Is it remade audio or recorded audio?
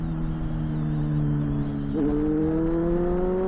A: recorded